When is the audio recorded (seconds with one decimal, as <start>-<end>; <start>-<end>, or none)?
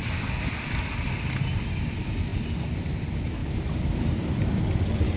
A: 0.0-3.4; 4.6-5.2